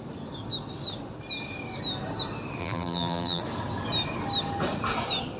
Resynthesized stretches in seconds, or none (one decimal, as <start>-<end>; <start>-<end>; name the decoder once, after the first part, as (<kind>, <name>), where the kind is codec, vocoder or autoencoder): 2.6-3.4 (vocoder, BigVGAN v2)